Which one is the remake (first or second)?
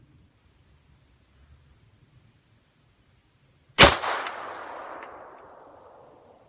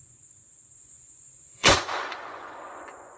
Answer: second